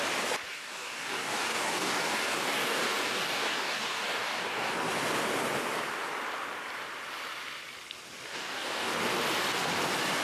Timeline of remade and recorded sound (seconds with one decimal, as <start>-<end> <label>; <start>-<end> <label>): 0.0-0.5 recorded; 0.5-4.7 remade; 4.7-8.3 recorded; 8.3-8.9 remade; 8.9-10.2 recorded

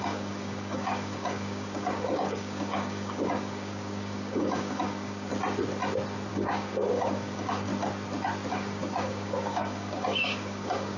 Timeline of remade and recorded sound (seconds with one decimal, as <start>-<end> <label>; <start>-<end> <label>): 0.0-5.3 remade; 5.3-6.3 recorded; 6.3-7.7 remade; 7.7-8.5 recorded; 8.5-11.0 remade

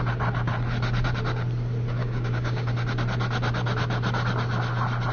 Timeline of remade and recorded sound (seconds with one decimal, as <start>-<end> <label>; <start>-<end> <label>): 0.0-2.0 recorded; 2.0-2.7 remade; 2.7-5.1 recorded

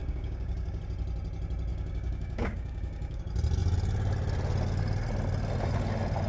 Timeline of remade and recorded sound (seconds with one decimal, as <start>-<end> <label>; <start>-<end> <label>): 0.0-0.8 remade; 0.8-1.7 recorded; 1.7-3.2 remade; 3.2-6.3 recorded